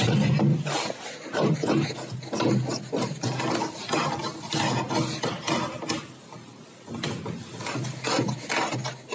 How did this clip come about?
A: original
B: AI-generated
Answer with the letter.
A